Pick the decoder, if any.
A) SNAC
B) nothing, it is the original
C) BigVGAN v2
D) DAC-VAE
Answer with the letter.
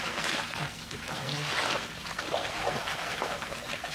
A